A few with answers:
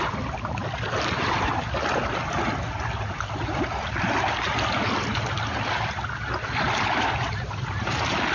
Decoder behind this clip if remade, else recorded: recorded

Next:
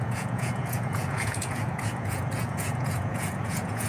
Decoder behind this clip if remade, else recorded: remade, vocoder, Vocos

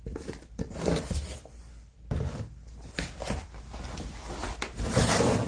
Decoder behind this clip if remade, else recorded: recorded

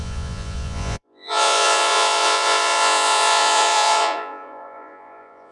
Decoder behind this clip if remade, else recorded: remade, vocoder, Vocos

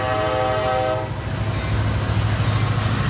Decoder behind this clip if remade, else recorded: recorded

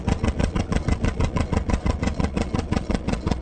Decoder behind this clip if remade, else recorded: remade, vocoder, Vocos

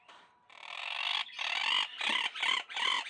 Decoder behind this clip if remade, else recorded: recorded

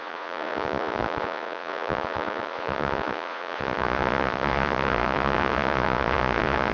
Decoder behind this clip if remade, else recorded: remade, vocoder, Vocos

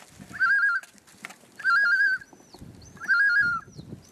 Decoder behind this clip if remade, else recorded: recorded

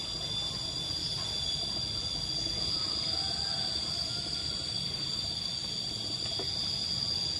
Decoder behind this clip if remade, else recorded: recorded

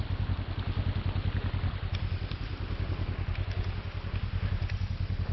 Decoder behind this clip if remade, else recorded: recorded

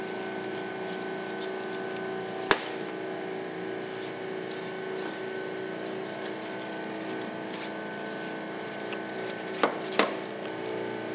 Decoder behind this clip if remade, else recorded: recorded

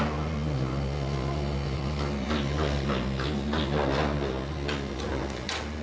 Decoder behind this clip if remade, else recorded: remade, vocoder, Vocos